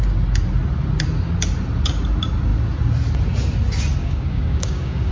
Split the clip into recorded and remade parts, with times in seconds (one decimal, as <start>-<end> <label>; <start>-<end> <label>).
0.0-4.0 recorded; 4.0-5.1 remade